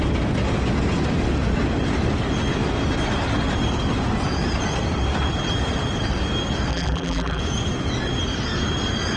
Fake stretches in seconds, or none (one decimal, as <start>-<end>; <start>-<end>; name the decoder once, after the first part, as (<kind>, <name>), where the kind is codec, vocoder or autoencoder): 6.7-7.4 (vocoder, BigVGAN v2)